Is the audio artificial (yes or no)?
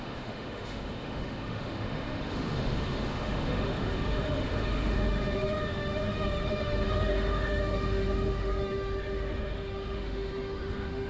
yes